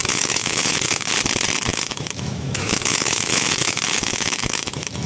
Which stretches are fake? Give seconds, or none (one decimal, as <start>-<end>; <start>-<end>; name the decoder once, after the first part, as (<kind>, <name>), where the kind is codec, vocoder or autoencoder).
0.0-1.1 (autoencoder, DAC-VAE); 1.7-5.1